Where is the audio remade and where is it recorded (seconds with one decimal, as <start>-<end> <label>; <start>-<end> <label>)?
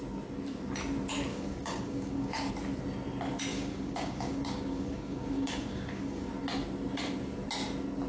0.0-1.3 recorded; 1.3-2.5 remade; 2.5-3.5 recorded; 3.5-6.3 remade; 6.3-8.1 recorded